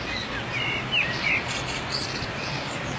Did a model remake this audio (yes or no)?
no